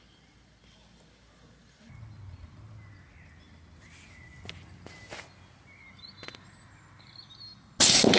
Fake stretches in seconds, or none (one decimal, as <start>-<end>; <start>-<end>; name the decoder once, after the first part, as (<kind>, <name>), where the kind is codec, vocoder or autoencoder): none